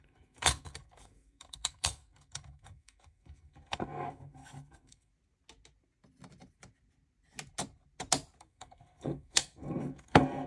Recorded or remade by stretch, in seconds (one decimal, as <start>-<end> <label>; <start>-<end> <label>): 0.0-5.1 remade; 5.1-8.4 recorded; 8.4-10.5 remade